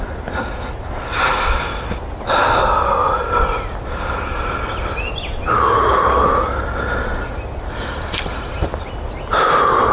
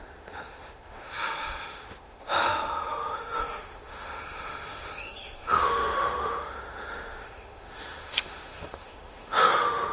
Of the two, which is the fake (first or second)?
second